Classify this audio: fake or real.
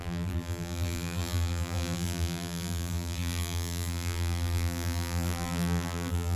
fake